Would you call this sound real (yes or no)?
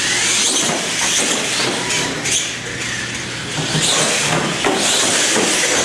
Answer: yes